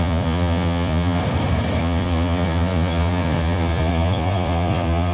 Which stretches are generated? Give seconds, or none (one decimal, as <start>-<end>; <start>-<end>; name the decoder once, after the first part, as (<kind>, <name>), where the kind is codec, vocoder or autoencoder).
0.0-1.2 (vocoder, Vocos); 1.8-5.1